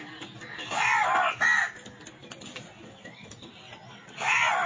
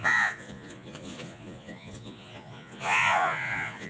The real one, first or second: first